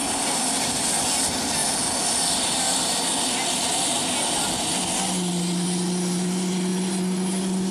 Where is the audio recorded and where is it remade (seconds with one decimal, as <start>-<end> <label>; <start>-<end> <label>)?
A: 0.0-7.7 recorded